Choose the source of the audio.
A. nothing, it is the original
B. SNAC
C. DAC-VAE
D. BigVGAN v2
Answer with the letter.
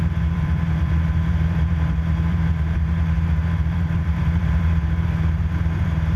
D